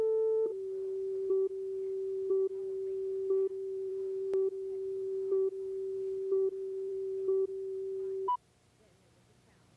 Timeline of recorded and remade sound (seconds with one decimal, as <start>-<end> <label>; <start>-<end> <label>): 0.0-3.9 recorded; 3.9-6.9 remade; 6.9-9.8 recorded